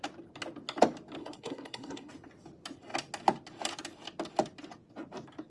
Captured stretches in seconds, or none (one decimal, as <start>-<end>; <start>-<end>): 0.0-1.2; 2.1-5.5